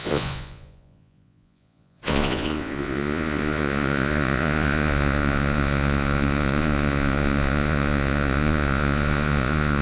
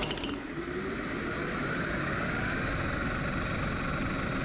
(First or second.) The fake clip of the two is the first